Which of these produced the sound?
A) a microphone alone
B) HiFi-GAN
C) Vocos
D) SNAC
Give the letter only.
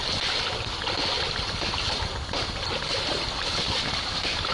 A